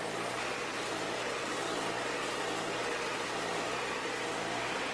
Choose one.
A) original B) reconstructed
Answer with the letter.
A